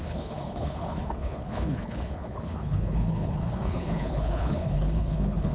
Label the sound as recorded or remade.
remade